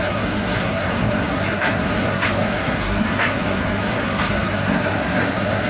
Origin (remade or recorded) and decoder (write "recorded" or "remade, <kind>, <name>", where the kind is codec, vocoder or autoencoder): remade, codec, SNAC